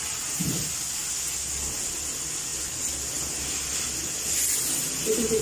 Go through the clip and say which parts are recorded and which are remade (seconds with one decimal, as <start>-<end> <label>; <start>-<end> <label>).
0.0-5.4 recorded